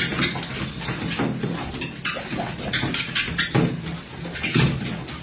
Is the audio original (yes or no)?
yes